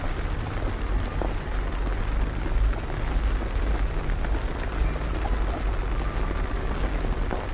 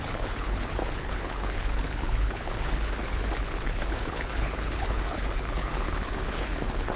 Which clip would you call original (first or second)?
first